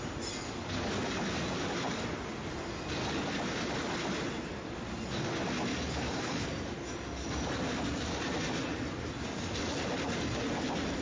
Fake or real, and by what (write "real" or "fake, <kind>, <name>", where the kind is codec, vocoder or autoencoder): real